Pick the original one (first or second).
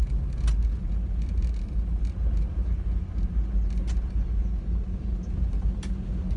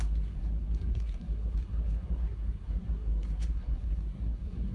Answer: first